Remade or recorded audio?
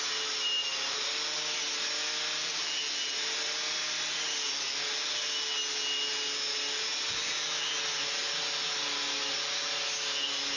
recorded